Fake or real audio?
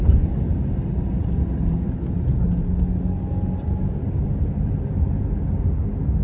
real